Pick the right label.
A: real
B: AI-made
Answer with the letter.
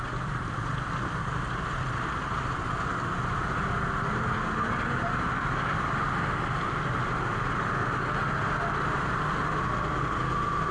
A